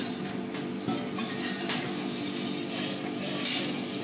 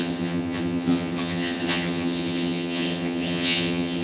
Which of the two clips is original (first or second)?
first